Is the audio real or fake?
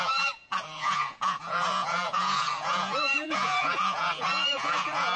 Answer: fake